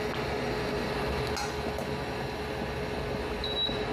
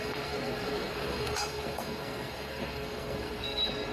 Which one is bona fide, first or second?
first